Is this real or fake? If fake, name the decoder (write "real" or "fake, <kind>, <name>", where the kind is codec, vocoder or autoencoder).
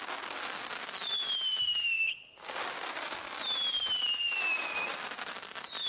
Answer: real